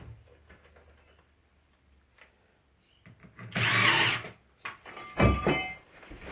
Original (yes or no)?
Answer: yes